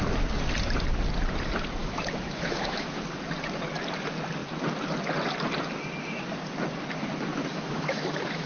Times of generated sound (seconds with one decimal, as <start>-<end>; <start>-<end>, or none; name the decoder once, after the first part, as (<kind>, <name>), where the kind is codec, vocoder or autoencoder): 1.8-3.0 (autoencoder, DAC-VAE); 7.5-8.5